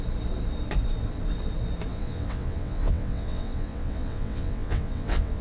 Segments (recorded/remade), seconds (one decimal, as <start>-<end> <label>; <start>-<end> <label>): 0.0-1.9 recorded; 1.9-5.4 remade